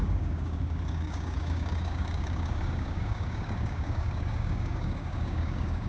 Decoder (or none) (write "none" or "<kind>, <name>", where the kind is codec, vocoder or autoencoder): codec, DAC